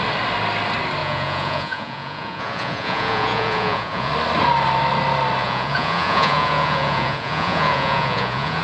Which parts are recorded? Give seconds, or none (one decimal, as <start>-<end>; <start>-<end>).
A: 0.0-1.0; 4.1-5.4